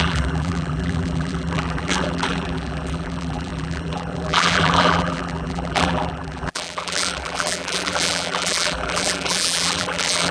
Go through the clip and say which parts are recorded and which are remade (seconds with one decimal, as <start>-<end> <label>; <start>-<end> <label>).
0.0-10.3 remade